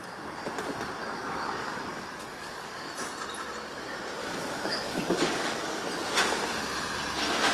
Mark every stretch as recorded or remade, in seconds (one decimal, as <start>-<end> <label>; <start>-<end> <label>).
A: 0.0-1.0 recorded; 1.0-2.9 remade; 2.9-4.2 recorded; 4.2-5.8 remade; 5.8-7.5 recorded